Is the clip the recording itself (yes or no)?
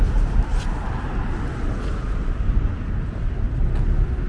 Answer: yes